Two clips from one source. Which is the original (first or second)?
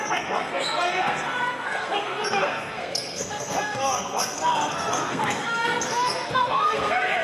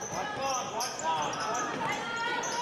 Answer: second